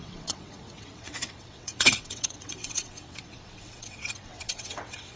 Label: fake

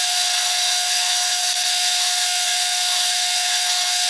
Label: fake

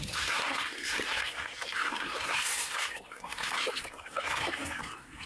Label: fake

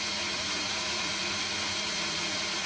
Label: fake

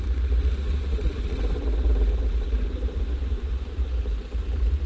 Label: fake